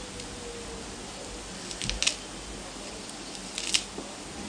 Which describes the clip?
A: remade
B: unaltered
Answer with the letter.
B